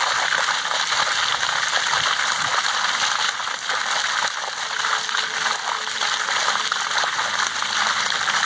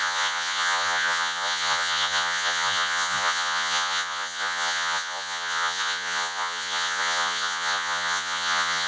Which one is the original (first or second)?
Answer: first